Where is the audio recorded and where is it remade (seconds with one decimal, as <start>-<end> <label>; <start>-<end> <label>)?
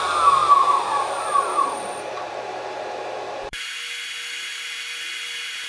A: 0.0-0.4 recorded; 0.4-3.8 remade; 3.8-5.7 recorded